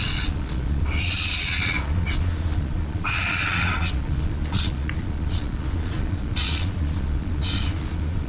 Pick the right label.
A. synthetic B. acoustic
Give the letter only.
A